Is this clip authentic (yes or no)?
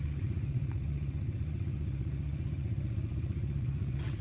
no